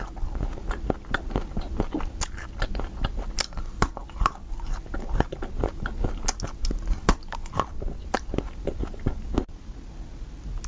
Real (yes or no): yes